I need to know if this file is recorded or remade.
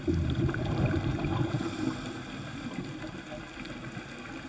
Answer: recorded